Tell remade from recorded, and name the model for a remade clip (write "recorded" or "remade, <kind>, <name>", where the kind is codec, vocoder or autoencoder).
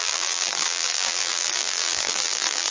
remade, vocoder, BigVGAN v2